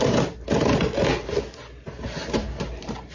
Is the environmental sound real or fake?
real